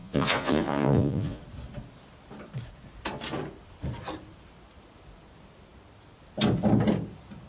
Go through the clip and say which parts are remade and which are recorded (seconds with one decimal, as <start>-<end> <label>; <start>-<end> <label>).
0.0-1.4 remade; 1.4-7.5 recorded